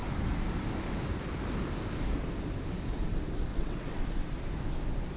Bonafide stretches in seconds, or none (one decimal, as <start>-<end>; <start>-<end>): 0.0-3.5; 4.0-5.2